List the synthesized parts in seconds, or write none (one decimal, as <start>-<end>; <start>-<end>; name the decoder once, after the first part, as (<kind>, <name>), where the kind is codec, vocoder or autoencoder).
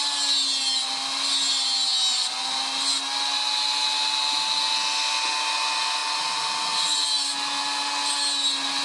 none